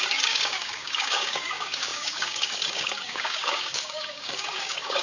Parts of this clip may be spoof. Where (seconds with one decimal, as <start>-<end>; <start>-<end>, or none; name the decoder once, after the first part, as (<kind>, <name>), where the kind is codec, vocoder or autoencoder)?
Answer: 0.0-5.0 (codec, DAC)